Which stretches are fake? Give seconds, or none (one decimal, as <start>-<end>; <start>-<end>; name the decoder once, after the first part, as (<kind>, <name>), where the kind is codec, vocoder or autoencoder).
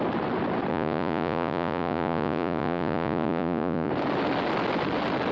0.7-3.9 (vocoder, Vocos)